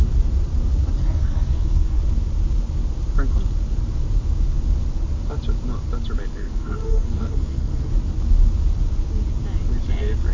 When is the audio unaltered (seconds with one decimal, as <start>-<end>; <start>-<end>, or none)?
0.0-1.0; 2.0-6.4; 7.9-10.3